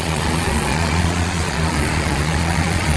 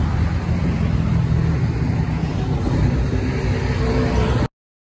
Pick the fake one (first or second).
first